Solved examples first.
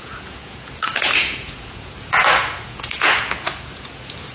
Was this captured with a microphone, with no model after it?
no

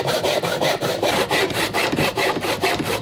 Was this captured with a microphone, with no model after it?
no